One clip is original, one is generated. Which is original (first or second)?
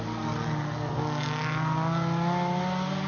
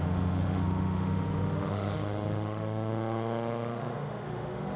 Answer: first